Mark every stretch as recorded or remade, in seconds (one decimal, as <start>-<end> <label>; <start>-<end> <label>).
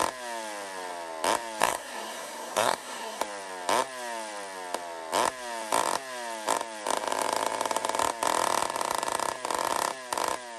0.0-1.6 recorded; 1.6-3.2 remade; 3.2-10.6 recorded